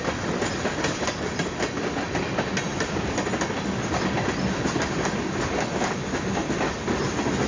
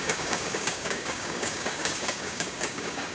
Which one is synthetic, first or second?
second